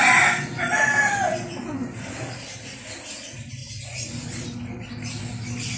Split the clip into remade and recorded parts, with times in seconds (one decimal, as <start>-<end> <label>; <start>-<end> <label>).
0.0-5.8 recorded